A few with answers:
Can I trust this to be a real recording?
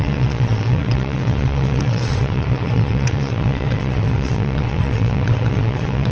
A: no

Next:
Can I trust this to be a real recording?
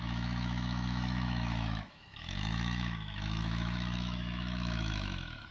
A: no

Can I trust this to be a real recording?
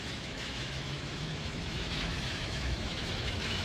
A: no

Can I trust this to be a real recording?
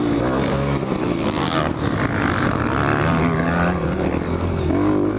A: yes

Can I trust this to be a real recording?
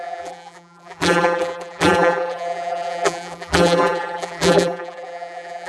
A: no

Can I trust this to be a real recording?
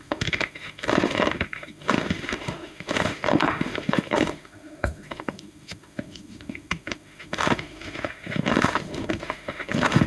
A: no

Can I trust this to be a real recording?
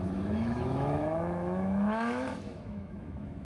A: no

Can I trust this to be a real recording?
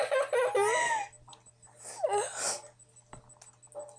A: yes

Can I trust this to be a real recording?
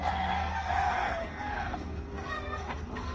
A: no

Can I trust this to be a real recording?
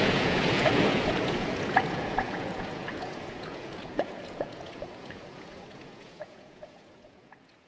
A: no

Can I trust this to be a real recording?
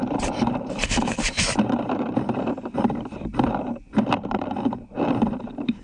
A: no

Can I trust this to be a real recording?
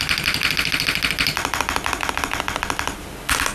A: yes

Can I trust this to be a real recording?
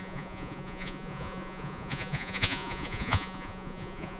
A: no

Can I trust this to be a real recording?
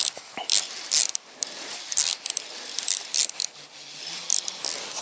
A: yes